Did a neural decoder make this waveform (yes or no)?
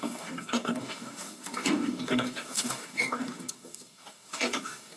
yes